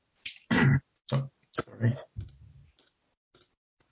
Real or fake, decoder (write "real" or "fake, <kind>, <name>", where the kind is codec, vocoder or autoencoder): real